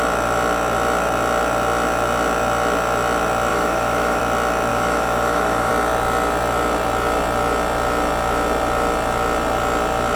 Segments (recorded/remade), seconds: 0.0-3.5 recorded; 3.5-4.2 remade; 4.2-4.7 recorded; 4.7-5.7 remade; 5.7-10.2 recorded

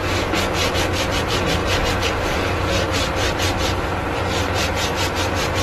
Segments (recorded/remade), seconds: 0.0-5.6 recorded

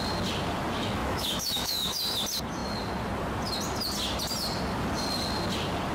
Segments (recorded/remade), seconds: 0.0-1.0 recorded; 1.0-2.0 remade; 2.0-5.9 recorded

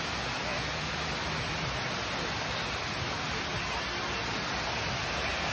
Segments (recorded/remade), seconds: 0.0-5.5 recorded

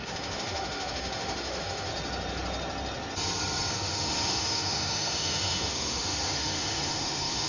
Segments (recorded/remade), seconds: 0.0-1.9 remade; 1.9-3.7 recorded; 3.7-7.5 remade

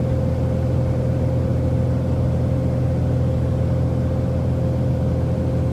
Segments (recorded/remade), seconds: 0.0-5.7 recorded

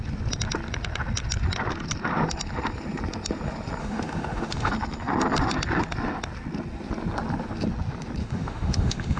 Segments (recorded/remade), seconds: 0.0-3.8 recorded; 3.8-4.7 remade; 4.7-8.2 recorded; 8.2-9.2 remade